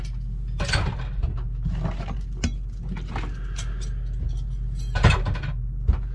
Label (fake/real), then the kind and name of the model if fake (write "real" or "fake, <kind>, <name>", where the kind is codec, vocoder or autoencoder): real